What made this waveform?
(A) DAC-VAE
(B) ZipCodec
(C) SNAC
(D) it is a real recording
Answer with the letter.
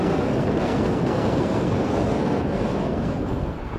C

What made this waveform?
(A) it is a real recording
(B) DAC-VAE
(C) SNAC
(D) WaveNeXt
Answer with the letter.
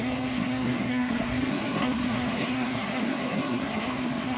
C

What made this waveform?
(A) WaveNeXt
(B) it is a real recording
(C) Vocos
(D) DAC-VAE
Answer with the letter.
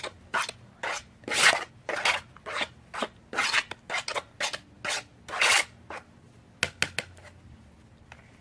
B